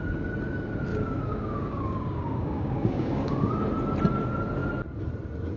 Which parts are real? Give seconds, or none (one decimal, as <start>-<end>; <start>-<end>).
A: 0.0-0.9; 3.5-5.6